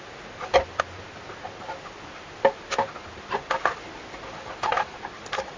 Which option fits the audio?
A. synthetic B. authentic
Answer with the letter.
B